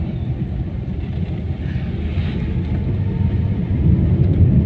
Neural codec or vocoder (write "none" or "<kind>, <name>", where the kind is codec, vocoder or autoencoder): none